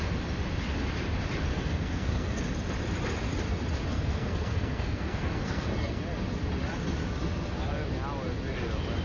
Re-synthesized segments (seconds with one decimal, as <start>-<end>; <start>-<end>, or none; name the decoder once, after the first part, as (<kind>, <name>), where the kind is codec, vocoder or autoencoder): 1.5-2.5 (codec, SNAC); 3.9-6.0